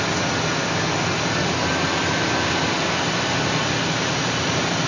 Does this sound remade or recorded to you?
recorded